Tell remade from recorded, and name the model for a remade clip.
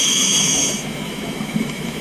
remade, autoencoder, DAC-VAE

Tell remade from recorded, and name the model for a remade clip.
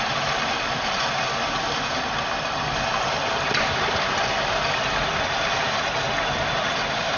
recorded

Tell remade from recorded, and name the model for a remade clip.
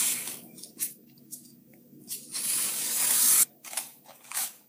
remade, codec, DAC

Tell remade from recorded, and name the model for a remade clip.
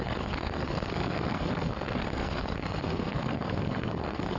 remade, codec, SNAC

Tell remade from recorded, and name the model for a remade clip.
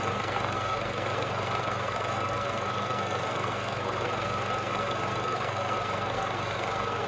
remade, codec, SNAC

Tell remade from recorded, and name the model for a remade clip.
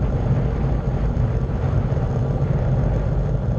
recorded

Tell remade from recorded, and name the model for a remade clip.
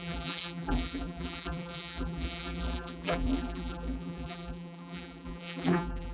remade, vocoder, BigVGAN v2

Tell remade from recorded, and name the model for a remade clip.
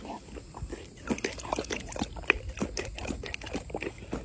recorded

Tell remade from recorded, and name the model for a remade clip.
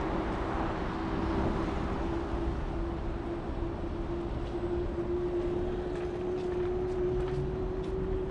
recorded